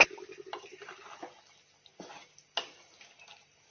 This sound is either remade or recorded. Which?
recorded